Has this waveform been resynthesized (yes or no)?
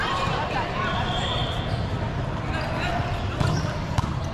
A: no